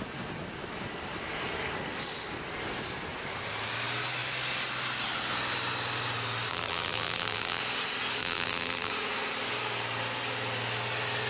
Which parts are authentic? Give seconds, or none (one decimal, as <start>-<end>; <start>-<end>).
0.0-6.5; 7.6-8.2; 8.9-11.3